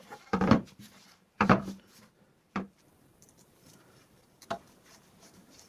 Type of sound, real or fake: fake